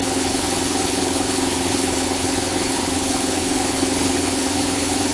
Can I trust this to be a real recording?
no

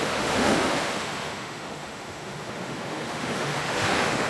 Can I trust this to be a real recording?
no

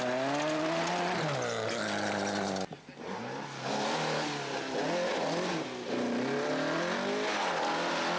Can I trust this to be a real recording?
yes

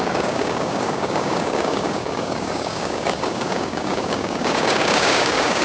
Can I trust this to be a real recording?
no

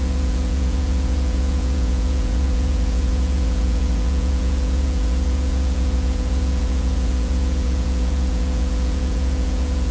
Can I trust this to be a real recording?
no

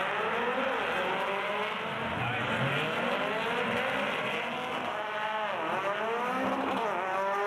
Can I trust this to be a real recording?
yes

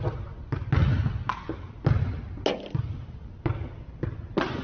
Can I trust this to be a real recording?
yes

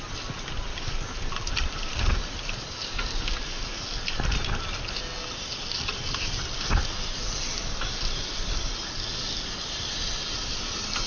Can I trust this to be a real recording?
yes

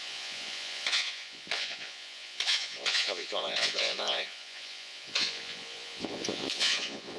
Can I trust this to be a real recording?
no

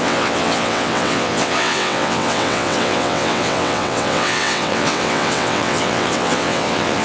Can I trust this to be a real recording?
no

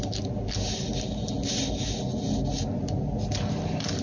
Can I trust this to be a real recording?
yes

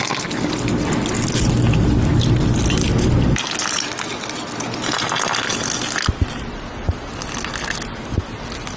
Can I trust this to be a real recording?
yes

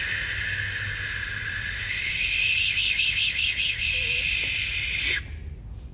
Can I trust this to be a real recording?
yes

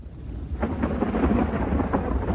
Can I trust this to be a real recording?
yes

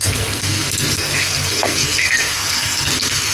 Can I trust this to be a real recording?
no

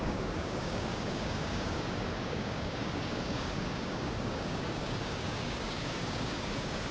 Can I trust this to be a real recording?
no